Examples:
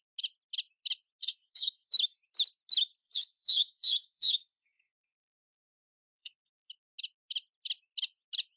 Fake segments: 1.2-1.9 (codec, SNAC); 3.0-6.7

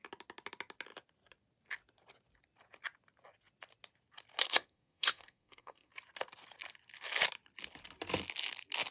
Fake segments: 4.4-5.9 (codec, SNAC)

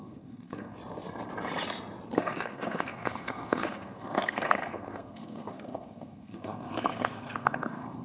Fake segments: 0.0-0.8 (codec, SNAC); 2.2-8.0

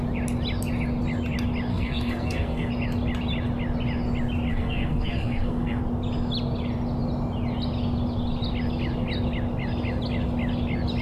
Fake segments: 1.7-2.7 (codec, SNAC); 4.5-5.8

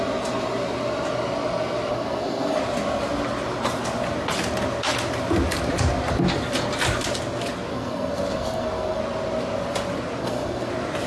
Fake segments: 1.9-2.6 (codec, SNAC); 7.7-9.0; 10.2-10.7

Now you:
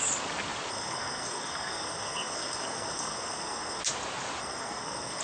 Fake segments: 0.7-3.8 (codec, SNAC); 4.4-5.2